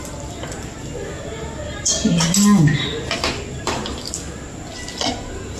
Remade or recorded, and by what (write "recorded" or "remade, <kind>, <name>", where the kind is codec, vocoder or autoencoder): recorded